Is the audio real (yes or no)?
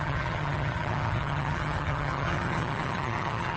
no